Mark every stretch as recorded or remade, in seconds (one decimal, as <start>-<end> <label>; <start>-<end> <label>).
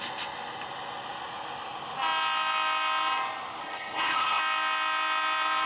0.0-3.6 recorded; 3.6-4.4 remade; 4.4-5.7 recorded